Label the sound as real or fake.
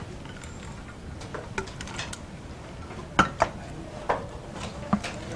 real